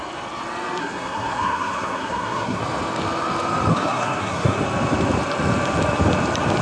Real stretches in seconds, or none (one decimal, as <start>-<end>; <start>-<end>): 0.0-0.8; 2.6-3.7; 4.6-6.6